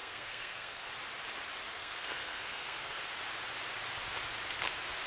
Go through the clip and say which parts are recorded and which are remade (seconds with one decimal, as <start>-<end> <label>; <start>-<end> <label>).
0.0-0.9 remade; 0.9-1.7 recorded; 1.7-3.0 remade; 3.0-5.1 recorded